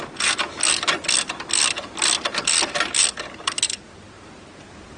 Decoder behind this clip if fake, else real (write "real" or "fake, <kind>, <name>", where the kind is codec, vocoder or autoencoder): real